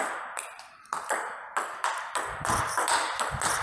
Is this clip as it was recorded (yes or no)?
yes